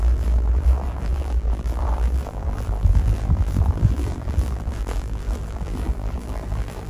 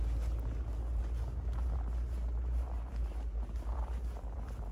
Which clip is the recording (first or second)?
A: second